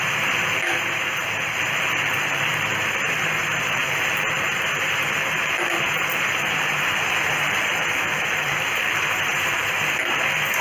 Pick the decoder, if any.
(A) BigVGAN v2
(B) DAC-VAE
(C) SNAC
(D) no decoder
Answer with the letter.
A